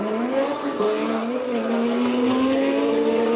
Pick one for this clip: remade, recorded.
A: recorded